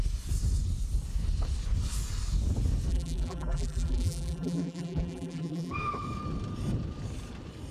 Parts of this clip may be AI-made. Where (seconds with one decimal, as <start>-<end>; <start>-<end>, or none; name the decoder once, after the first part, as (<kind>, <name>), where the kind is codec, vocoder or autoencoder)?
2.9-5.7 (vocoder, BigVGAN v2)